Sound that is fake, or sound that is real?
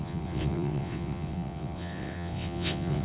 fake